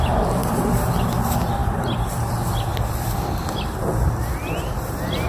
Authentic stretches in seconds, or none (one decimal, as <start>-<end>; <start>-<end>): 0.0-1.6; 2.3-2.7; 3.7-5.3